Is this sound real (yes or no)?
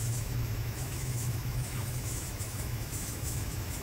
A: no